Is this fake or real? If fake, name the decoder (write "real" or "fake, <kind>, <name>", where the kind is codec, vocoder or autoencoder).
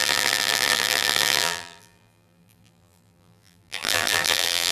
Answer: fake, vocoder, BigVGAN v2